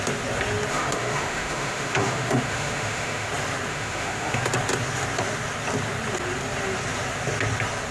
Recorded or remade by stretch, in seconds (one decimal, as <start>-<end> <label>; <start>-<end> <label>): 0.0-0.7 recorded; 0.7-3.3 remade; 3.3-3.7 recorded; 3.7-4.4 remade; 4.4-7.9 recorded